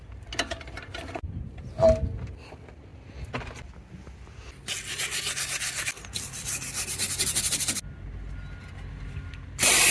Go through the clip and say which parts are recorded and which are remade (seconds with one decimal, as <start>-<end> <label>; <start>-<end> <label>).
0.0-9.9 recorded